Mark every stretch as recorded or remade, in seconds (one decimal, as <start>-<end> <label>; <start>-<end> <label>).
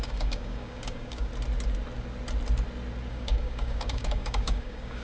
0.0-1.3 remade; 1.3-3.1 recorded; 3.1-5.0 remade